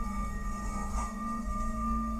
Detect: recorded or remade remade